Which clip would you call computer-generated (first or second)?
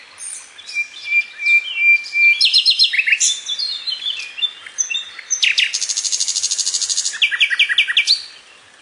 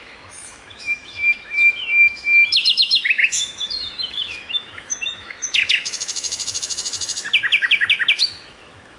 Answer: second